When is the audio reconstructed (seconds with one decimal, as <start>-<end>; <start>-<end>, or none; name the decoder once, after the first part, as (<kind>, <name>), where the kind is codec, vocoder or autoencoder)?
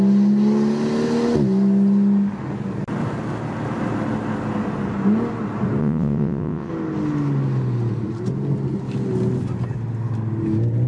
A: 5.8-6.7 (vocoder, WaveNeXt)